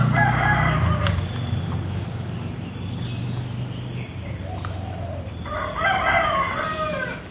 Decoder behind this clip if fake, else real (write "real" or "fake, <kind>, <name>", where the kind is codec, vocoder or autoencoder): fake, vocoder, BigVGAN v2